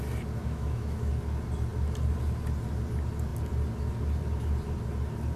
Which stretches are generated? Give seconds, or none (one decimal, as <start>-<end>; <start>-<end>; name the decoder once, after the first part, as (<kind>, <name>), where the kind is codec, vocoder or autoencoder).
0.4-1.1 (autoencoder, DAC-VAE)